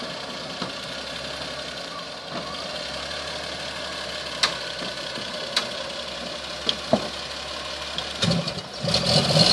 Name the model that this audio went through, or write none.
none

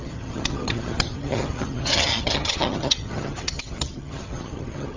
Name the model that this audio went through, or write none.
vocoder, HiFi-GAN